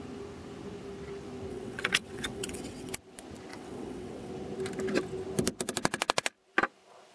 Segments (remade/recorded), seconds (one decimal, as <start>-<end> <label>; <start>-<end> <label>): 0.0-1.5 recorded; 1.5-2.9 remade; 2.9-3.5 recorded; 3.5-4.3 remade; 4.3-7.1 recorded